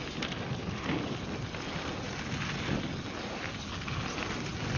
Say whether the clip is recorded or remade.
recorded